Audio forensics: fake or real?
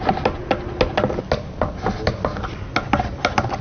real